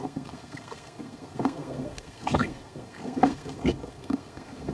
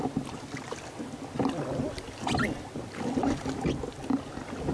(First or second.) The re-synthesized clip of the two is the first